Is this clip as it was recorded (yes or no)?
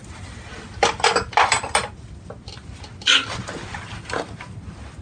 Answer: yes